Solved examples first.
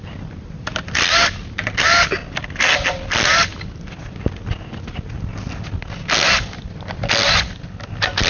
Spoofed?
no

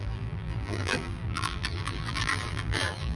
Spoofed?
yes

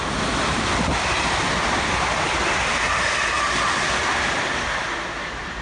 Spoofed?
no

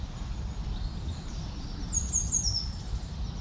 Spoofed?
no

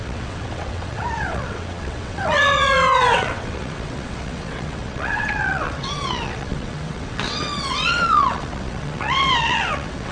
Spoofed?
yes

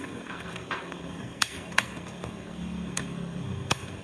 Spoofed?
yes